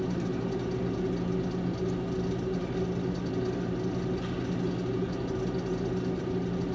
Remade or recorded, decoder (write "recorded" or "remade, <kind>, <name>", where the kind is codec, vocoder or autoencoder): recorded